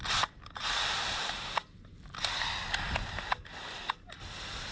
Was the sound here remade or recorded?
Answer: recorded